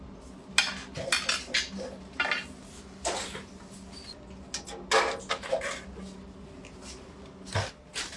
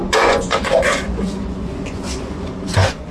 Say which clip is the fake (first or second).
second